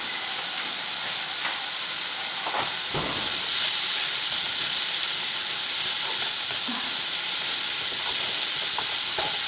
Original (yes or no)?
yes